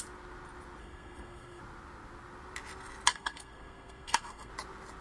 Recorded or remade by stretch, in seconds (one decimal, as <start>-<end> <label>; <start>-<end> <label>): 0.0-0.8 recorded; 0.8-1.6 remade; 1.6-3.1 recorded; 3.1-4.5 remade; 4.5-5.0 recorded